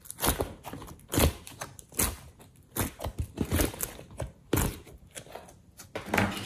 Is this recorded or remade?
recorded